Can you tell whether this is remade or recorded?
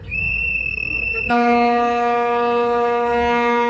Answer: remade